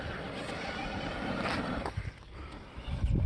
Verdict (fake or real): real